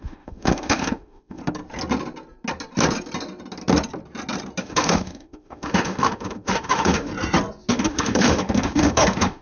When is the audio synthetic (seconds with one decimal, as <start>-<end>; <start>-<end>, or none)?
0.0-1.4; 4.6-7.1; 7.7-9.4